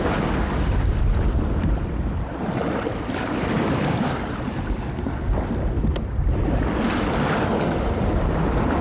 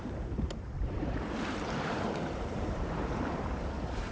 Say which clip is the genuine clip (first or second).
first